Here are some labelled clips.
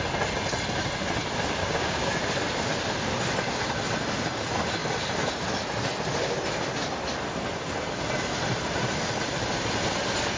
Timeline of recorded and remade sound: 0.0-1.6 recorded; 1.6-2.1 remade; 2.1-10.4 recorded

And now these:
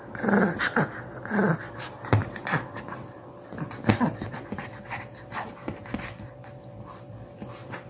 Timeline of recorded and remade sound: 0.0-7.9 recorded

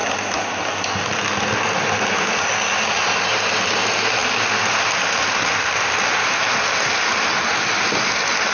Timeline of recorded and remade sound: 0.0-8.5 recorded

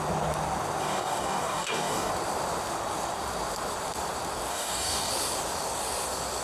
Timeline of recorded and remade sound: 0.0-0.8 recorded; 0.8-2.1 remade; 2.1-4.5 recorded; 4.5-5.1 remade; 5.1-6.4 recorded

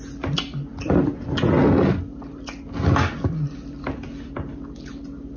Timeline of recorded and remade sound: 0.0-5.4 recorded

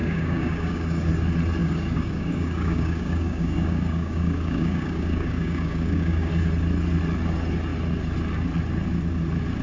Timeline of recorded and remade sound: 0.0-1.1 remade; 1.1-1.6 recorded; 1.6-6.3 remade; 6.3-9.6 recorded

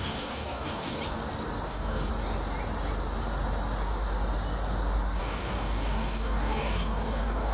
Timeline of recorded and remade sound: 0.0-1.0 remade; 1.0-1.7 recorded; 1.7-2.1 remade; 2.1-5.2 recorded; 5.2-7.5 remade